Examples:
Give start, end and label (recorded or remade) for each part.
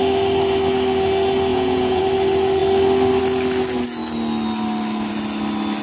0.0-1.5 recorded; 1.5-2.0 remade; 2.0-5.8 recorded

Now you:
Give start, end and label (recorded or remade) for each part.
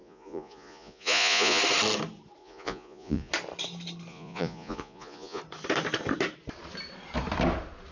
0.0-1.6 remade; 1.6-2.4 recorded; 2.4-3.3 remade; 3.3-4.1 recorded; 4.1-5.4 remade; 5.4-7.9 recorded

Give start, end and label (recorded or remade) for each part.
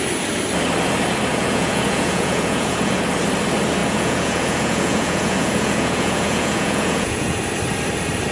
0.0-1.3 recorded; 1.3-3.0 remade; 3.0-3.8 recorded; 3.8-7.4 remade; 7.4-8.3 recorded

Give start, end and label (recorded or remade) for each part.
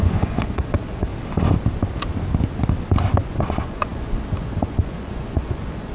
0.0-1.1 remade; 1.1-3.3 recorded; 3.3-5.9 remade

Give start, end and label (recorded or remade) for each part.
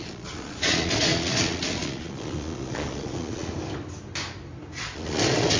0.0-3.5 remade; 3.5-4.8 recorded; 4.8-5.6 remade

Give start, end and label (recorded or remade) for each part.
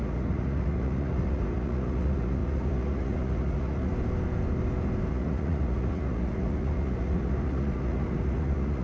0.0-3.9 remade; 3.9-5.1 recorded; 5.1-8.8 remade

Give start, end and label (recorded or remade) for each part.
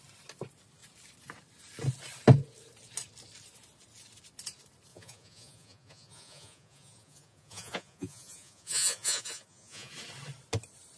0.0-4.9 recorded; 4.9-9.9 remade; 9.9-11.0 recorded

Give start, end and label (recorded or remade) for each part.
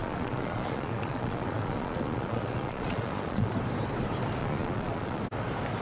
0.0-3.5 remade; 3.5-4.4 recorded; 4.4-5.2 remade; 5.2-5.8 recorded